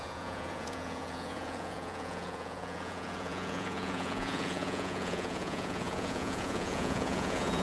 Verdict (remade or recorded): remade